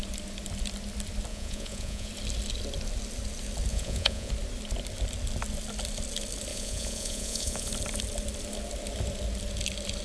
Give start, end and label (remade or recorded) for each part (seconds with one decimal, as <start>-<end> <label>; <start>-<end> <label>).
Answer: 0.0-1.3 recorded; 1.3-2.1 remade; 2.1-3.7 recorded; 3.7-4.3 remade; 4.3-6.5 recorded; 6.5-7.7 remade; 7.7-10.0 recorded